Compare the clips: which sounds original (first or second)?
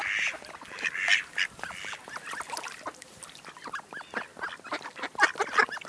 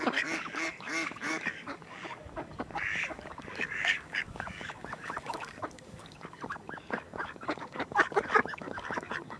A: first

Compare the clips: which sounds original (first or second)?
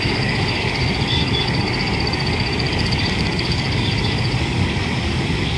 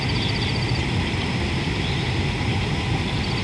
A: second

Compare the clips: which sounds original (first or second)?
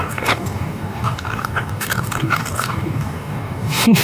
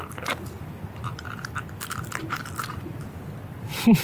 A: second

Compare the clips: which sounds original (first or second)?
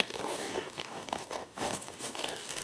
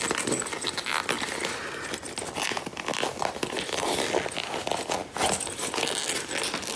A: second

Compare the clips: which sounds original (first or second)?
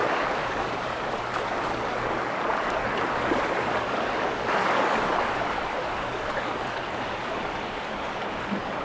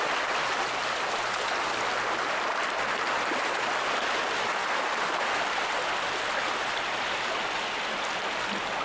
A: second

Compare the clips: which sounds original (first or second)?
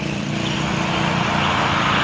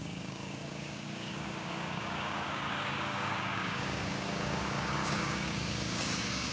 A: first